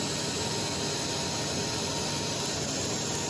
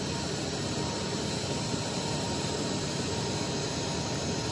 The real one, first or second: first